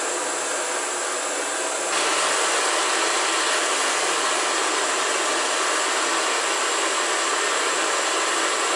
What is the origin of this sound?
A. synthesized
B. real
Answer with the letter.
B